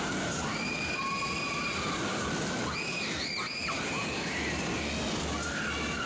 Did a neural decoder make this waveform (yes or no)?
no